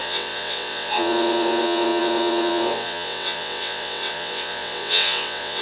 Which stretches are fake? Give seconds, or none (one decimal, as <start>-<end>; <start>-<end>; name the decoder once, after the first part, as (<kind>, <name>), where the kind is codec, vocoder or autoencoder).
0.0-5.6 (vocoder, WaveNeXt)